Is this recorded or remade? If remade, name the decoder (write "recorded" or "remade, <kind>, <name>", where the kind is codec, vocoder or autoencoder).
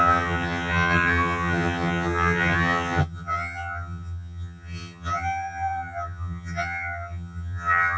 remade, vocoder, HiFi-GAN